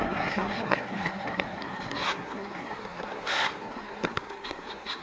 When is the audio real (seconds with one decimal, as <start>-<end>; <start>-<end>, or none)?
none

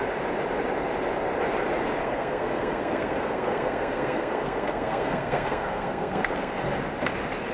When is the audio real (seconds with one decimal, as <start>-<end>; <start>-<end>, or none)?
0.0-2.0; 6.5-7.5

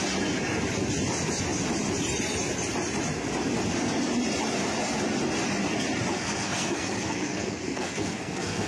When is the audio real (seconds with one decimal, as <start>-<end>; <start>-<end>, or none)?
0.0-6.1